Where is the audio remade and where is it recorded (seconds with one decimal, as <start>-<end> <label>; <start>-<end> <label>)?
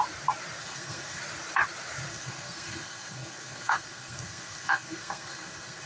0.0-0.6 recorded; 0.6-1.2 remade; 1.2-2.1 recorded; 2.1-5.9 remade